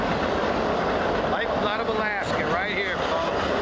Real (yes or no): yes